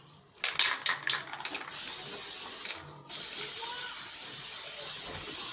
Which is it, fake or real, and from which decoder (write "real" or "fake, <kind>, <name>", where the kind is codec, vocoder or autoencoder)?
real